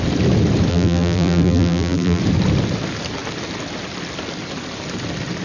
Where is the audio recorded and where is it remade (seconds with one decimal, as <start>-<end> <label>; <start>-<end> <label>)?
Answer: 0.0-0.7 recorded; 0.7-2.2 remade; 2.2-5.4 recorded